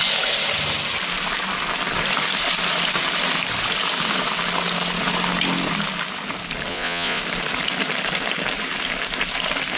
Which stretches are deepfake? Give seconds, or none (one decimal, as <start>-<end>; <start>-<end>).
6.7-7.2